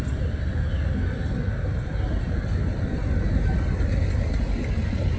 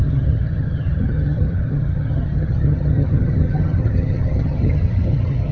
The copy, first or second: second